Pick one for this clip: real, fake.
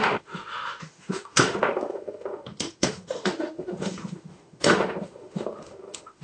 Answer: fake